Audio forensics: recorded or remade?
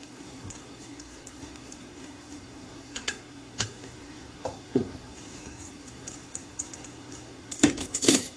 remade